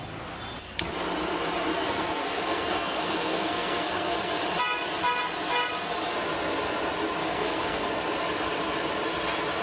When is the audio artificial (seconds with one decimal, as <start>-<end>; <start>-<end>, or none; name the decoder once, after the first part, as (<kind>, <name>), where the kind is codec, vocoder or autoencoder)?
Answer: 1.7-4.4 (codec, SNAC); 7.2-7.9